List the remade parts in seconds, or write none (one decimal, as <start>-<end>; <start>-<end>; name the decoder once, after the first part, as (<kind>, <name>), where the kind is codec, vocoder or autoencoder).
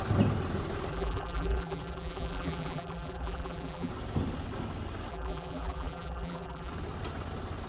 0.9-3.9 (vocoder, BigVGAN v2); 5.1-6.7